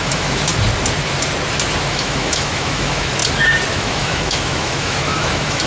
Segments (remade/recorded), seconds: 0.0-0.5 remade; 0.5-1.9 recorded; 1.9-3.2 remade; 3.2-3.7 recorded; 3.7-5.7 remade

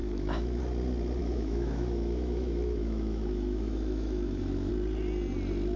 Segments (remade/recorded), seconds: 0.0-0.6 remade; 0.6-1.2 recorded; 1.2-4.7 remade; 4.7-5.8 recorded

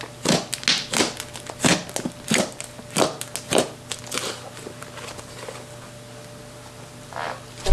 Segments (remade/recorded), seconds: 0.0-7.7 recorded

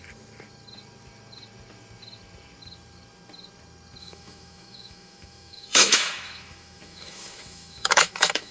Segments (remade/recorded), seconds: 0.0-4.0 recorded; 4.0-8.5 remade